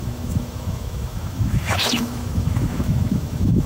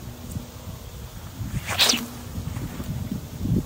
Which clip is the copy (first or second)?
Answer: first